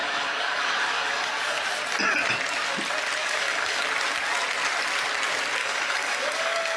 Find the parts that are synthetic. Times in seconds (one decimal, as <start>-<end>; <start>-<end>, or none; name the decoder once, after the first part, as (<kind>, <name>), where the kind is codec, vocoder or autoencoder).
0.0-1.4 (codec, DAC); 3.2-3.8; 5.6-6.8